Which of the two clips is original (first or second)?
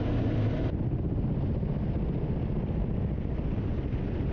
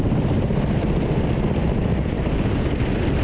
first